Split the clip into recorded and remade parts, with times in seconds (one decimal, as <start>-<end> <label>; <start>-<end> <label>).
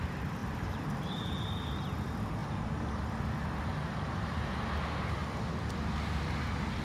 0.0-0.4 recorded; 0.4-1.3 remade; 1.3-6.8 recorded